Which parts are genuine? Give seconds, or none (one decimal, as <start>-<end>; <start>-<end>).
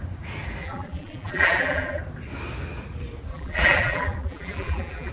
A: 0.0-0.6; 2.0-3.3